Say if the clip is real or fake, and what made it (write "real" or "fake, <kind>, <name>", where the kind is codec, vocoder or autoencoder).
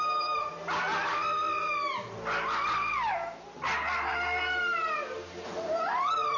real